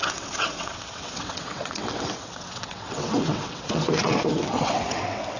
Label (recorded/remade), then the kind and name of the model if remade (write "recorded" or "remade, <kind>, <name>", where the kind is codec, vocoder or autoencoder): remade, vocoder, WaveNeXt